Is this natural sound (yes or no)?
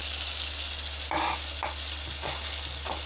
yes